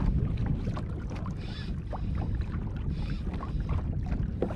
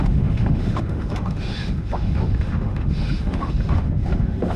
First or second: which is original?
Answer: first